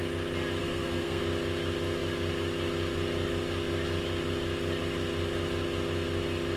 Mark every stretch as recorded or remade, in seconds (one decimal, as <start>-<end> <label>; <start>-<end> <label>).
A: 0.0-0.6 recorded; 0.6-1.2 remade; 1.2-6.6 recorded